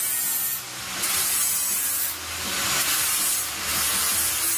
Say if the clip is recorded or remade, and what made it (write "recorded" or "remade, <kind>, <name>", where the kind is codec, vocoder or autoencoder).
recorded